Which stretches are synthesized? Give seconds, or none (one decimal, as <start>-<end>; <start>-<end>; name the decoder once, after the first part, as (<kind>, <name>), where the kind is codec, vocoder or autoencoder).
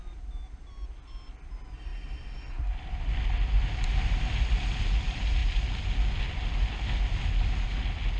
none